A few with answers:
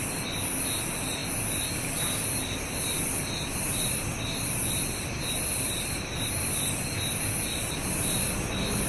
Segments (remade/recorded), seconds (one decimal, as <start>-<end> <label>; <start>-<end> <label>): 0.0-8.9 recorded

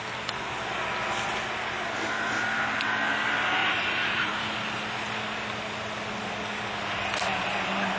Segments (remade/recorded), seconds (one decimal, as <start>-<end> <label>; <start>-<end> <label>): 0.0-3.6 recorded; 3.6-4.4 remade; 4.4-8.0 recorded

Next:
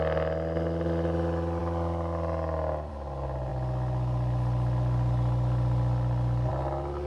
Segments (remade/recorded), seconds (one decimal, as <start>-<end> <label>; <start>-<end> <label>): 0.0-7.1 recorded

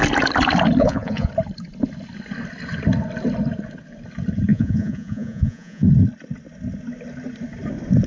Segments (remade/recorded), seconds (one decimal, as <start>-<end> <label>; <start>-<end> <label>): 0.0-0.8 recorded; 0.8-1.3 remade; 1.3-4.5 recorded; 4.5-5.9 remade; 5.9-8.1 recorded

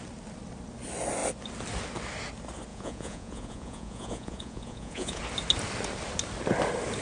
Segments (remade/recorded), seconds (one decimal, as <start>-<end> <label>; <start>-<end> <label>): 0.0-2.7 recorded; 2.7-5.2 remade; 5.2-7.0 recorded

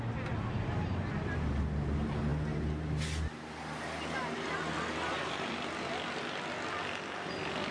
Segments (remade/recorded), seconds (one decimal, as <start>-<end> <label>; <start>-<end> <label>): 0.0-7.7 recorded

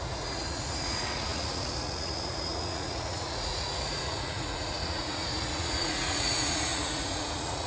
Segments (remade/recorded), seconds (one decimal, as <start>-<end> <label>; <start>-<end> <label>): 0.0-7.7 remade

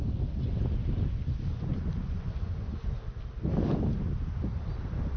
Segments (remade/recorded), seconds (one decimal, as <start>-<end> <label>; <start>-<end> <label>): 0.0-1.5 recorded; 1.5-2.8 remade; 2.8-5.2 recorded